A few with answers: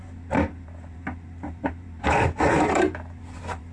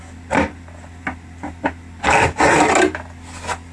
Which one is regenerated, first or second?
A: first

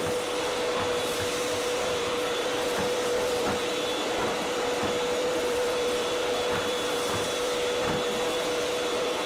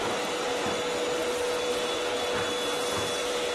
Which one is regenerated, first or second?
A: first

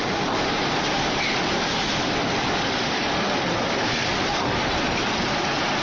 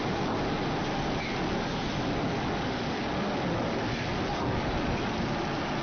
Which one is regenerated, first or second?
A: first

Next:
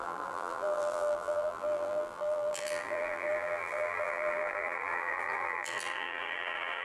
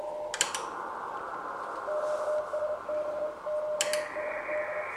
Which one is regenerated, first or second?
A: first